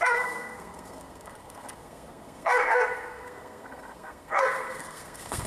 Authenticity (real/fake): fake